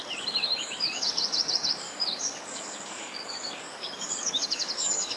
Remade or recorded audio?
remade